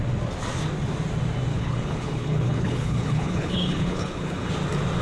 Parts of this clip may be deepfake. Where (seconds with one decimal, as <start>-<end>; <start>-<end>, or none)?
1.5-4.5